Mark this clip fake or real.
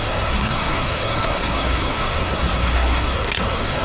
fake